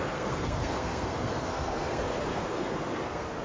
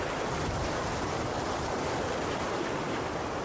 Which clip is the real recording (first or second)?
second